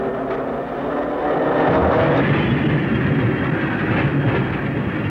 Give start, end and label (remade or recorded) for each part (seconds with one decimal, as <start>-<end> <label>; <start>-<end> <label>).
0.0-5.1 recorded